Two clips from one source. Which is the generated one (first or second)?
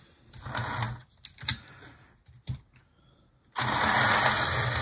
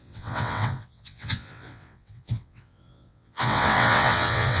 second